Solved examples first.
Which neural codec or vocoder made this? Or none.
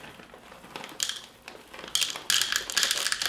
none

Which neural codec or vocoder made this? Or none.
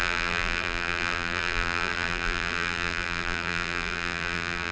vocoder, BigVGAN v2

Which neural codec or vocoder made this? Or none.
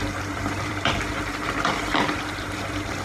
vocoder, BigVGAN v2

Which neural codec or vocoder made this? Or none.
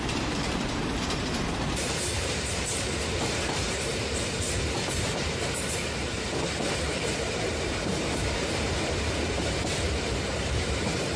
vocoder, BigVGAN v2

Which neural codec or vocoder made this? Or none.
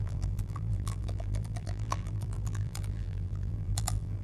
vocoder, BigVGAN v2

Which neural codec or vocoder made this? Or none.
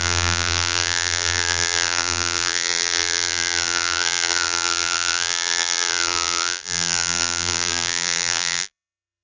vocoder, BigVGAN v2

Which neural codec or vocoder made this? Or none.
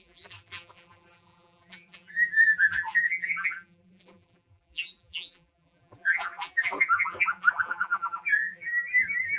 vocoder, BigVGAN v2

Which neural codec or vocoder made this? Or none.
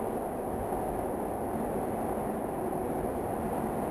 none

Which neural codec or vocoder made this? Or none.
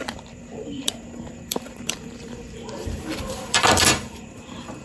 vocoder, BigVGAN v2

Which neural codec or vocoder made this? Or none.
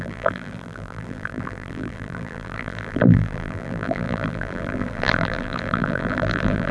vocoder, BigVGAN v2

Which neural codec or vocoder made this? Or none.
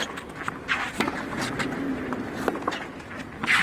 none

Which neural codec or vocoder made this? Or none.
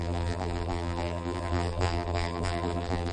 vocoder, BigVGAN v2